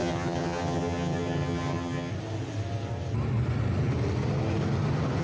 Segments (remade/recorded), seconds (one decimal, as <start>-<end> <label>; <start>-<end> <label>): 0.0-2.1 remade; 2.1-5.2 recorded